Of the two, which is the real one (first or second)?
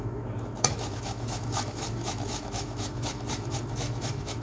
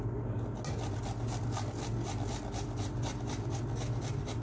second